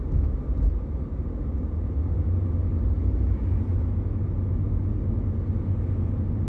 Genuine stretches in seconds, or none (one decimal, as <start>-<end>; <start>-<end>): 0.0-6.5